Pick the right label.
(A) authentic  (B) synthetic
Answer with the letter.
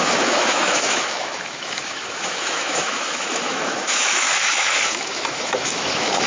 B